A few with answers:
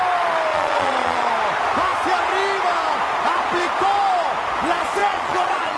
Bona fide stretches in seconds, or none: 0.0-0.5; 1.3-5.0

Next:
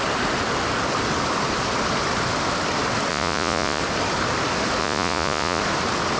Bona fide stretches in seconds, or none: 0.0-3.1; 3.8-4.8; 5.6-6.2

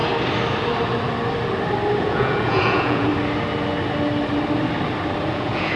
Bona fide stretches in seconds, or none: 0.0-2.0; 3.1-5.3

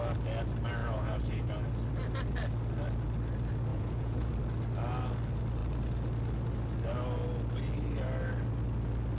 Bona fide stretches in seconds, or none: 0.0-0.8; 1.5-3.7; 4.3-9.2

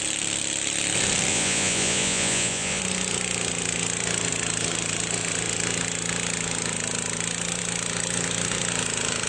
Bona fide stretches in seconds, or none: 0.0-1.3; 2.8-9.3

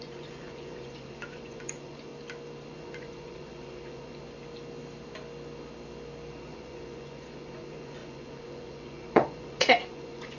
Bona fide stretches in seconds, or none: 2.1-2.7; 4.2-6.3